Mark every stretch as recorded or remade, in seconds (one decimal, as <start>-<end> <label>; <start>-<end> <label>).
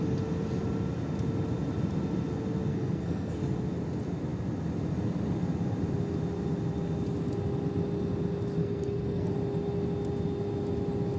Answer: 0.0-2.7 recorded; 2.7-3.4 remade; 3.4-8.6 recorded; 8.6-9.3 remade; 9.3-11.2 recorded